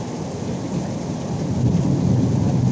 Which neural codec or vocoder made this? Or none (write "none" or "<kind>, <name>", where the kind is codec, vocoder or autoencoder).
none